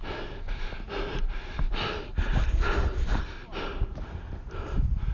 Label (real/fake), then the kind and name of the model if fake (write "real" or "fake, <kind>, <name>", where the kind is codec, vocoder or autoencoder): real